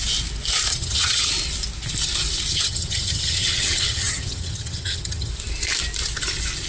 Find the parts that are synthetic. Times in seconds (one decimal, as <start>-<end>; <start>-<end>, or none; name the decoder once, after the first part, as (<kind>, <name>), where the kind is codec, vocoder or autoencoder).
0.7-1.3 (vocoder, HiFi-GAN); 2.5-5.3